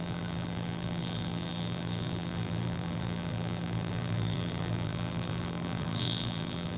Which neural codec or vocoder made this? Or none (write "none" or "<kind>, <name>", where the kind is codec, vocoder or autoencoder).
vocoder, BigVGAN v2